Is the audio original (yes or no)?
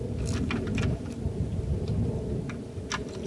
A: yes